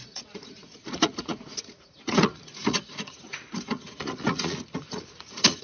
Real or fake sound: fake